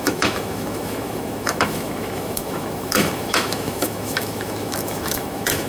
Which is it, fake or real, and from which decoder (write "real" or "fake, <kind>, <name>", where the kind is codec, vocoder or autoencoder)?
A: fake, autoencoder, DAC-VAE